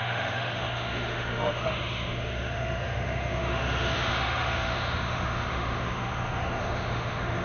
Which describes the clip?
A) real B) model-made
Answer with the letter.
B